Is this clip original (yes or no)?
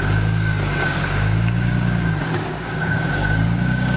no